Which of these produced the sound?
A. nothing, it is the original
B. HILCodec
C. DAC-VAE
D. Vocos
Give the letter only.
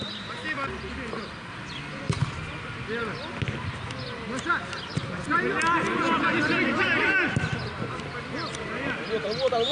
A